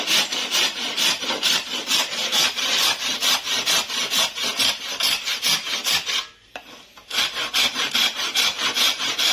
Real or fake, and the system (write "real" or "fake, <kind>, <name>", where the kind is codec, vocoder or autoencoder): fake, vocoder, BigVGAN v2